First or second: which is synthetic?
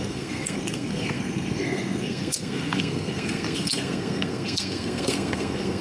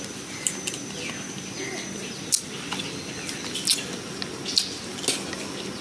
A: first